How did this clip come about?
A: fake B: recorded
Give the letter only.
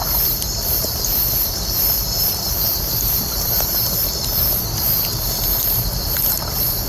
A